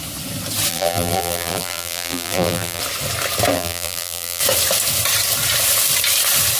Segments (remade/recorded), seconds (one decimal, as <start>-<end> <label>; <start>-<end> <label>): 0.0-0.7 recorded; 0.7-2.8 remade; 2.8-3.5 recorded; 3.5-4.4 remade; 4.4-6.6 recorded